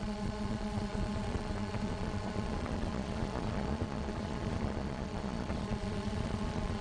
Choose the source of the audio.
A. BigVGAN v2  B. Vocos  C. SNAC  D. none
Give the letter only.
B